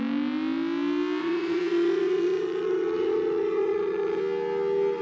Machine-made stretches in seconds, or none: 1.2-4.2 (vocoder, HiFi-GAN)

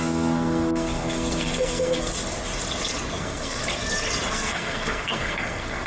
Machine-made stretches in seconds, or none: 0.0-2.1 (codec, SNAC); 3.1-3.6; 4.3-5.9

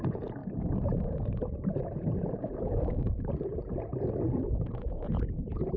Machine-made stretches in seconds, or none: 0.0-3.9 (vocoder, Vocos); 4.7-5.8